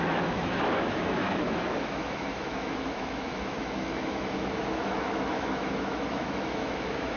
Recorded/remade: remade